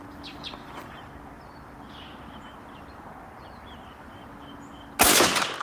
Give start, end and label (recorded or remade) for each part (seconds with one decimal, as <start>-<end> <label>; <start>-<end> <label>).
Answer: 0.0-5.6 recorded